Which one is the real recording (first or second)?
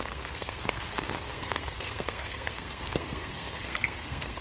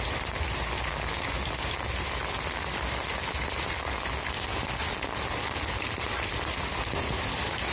second